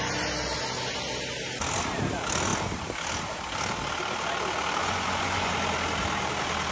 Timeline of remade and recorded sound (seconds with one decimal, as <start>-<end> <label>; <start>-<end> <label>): 0.0-4.8 recorded; 4.8-5.5 remade; 5.5-6.7 recorded